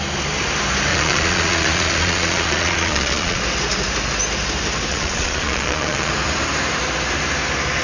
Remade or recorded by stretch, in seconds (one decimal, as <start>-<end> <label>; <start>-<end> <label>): 0.0-0.9 recorded; 0.9-3.4 remade; 3.4-4.9 recorded; 4.9-6.1 remade; 6.1-7.8 recorded